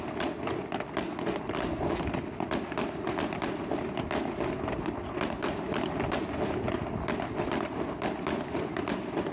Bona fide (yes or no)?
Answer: no